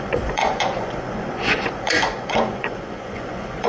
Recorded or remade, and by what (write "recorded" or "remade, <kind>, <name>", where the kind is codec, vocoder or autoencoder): remade, vocoder, Vocos